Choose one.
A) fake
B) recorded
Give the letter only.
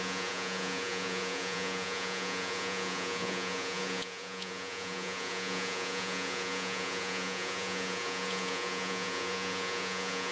A